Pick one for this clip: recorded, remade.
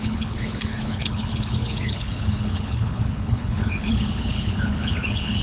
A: remade